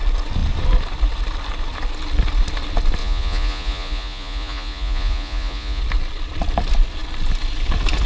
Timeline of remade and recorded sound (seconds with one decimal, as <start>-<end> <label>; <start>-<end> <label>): 0.0-3.0 recorded; 3.0-5.8 remade; 5.8-8.1 recorded